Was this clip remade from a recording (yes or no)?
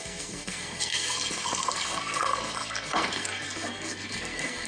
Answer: yes